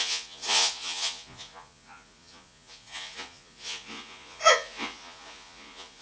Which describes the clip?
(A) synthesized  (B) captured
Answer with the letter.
A